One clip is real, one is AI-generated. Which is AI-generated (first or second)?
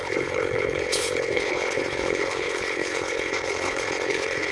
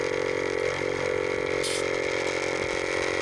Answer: first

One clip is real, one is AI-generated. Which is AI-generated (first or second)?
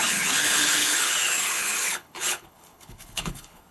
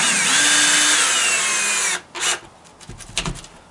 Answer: first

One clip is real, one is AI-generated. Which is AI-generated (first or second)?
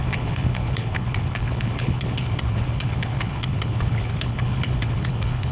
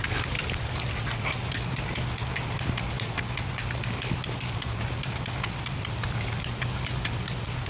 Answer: first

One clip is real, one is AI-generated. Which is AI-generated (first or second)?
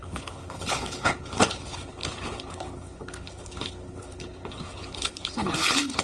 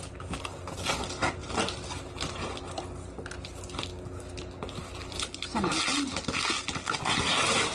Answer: first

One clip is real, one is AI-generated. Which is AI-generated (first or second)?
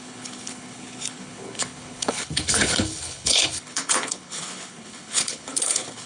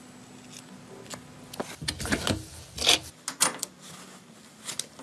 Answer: first